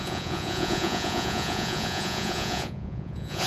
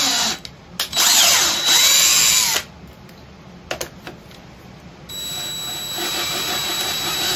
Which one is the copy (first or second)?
first